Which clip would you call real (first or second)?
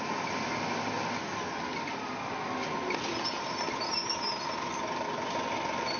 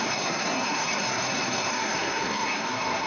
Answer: first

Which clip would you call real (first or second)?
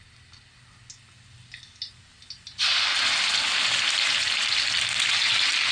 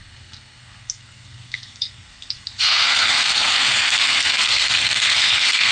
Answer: first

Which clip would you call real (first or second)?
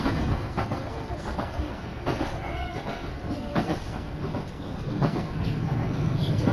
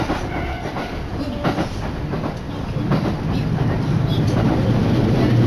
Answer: second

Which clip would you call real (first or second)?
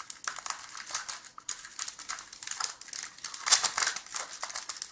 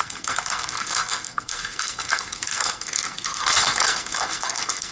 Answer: first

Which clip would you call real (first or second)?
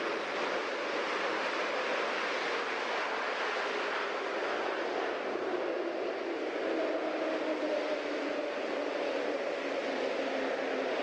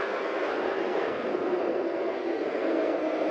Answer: first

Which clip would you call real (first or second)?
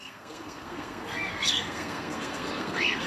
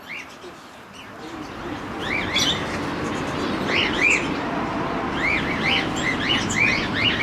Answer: second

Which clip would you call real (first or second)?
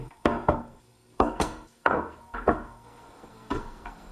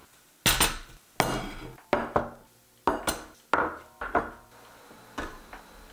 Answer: second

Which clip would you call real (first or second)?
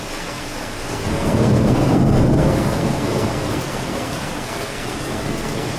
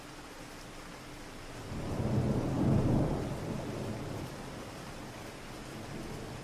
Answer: second